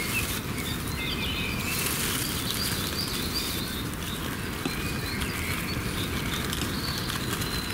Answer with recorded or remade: recorded